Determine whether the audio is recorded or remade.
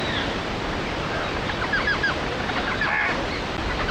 recorded